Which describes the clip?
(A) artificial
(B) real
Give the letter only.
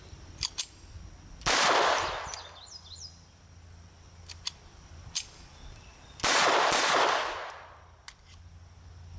B